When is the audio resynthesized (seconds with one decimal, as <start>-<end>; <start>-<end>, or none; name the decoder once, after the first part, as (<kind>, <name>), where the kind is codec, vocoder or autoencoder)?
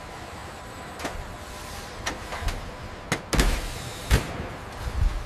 none